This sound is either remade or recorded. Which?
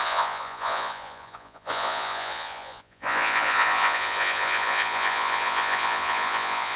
remade